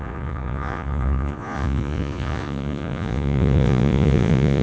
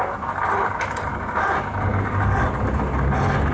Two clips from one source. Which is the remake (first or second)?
first